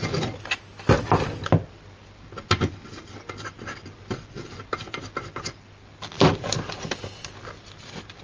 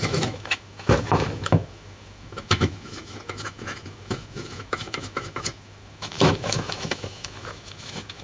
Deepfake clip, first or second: second